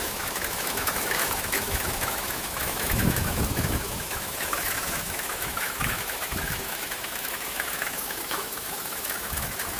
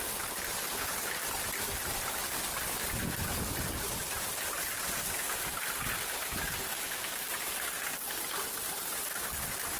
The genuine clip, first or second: second